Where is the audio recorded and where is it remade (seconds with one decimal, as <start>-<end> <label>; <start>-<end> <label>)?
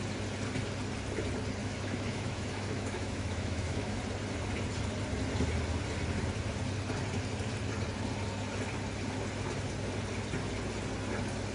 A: 0.0-1.6 recorded; 1.6-4.0 remade; 4.0-11.5 recorded